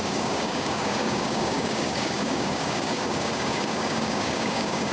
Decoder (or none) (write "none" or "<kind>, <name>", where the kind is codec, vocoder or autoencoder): codec, DAC